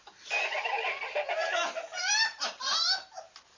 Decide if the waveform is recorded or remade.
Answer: recorded